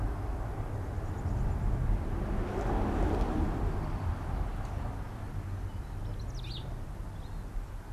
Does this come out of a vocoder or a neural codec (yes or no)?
no